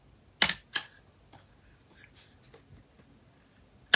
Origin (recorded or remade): recorded